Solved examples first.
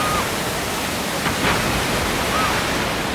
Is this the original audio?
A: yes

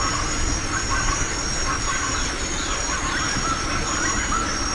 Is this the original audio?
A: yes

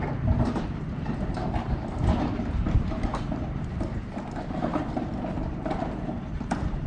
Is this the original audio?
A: no